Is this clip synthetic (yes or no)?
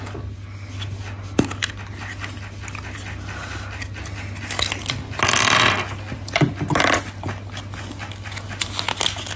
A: no